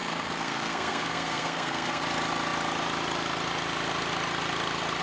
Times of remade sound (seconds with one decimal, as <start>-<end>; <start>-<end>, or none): 0.0-2.0